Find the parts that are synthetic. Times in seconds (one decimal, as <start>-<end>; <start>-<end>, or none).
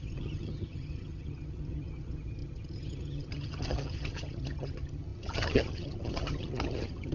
0.0-7.1